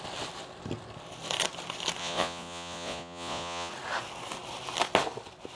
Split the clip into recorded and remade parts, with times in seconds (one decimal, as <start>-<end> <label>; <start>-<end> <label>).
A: 0.0-2.0 recorded; 2.0-3.7 remade; 3.7-5.6 recorded